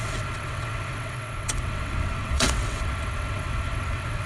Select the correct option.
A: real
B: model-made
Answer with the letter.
B